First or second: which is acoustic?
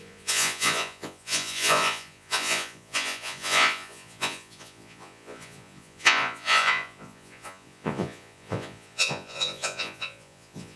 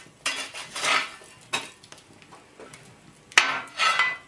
second